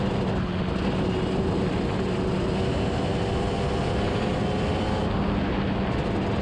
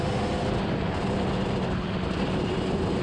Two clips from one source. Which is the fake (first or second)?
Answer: second